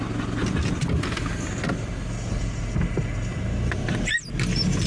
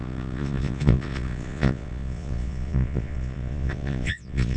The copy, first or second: second